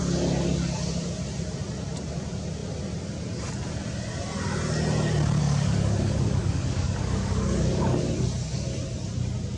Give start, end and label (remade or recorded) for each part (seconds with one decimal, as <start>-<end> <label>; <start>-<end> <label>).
0.0-5.4 recorded; 5.4-8.1 remade; 8.1-9.6 recorded